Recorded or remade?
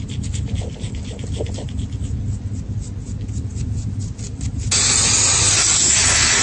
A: recorded